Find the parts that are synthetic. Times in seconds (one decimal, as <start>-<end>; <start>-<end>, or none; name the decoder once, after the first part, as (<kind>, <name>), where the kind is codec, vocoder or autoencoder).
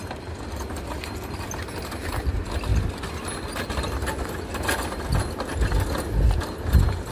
none